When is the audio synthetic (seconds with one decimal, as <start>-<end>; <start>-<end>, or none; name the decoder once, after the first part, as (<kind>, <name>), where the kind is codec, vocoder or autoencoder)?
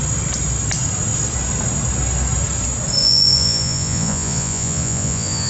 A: 3.0-5.5 (vocoder, Vocos)